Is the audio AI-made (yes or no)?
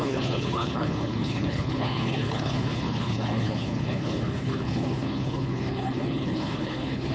yes